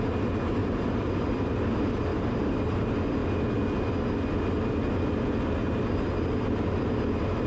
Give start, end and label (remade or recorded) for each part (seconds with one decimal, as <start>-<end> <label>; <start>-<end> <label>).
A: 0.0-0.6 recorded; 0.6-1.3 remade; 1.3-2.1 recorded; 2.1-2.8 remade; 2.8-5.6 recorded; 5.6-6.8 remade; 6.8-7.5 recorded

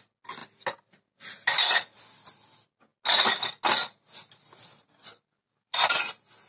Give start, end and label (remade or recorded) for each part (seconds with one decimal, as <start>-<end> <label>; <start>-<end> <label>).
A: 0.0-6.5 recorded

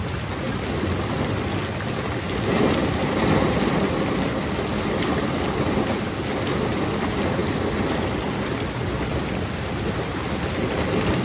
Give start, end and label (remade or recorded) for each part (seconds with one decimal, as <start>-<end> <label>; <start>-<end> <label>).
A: 0.0-11.2 recorded

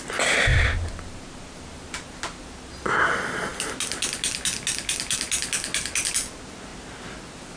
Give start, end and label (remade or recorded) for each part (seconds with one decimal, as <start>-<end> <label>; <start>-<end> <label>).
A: 0.0-7.6 recorded